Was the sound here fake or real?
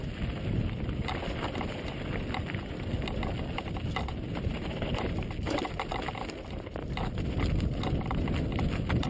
real